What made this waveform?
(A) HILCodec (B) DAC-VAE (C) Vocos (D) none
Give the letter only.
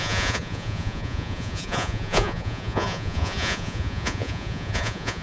C